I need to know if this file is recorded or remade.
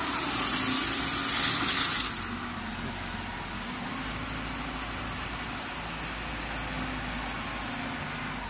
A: recorded